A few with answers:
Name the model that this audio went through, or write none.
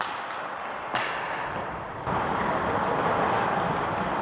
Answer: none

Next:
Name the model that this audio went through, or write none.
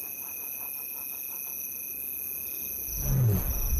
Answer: none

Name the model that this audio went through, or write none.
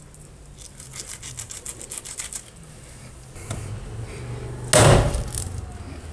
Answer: none